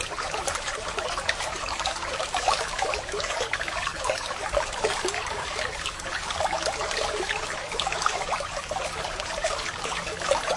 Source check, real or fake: fake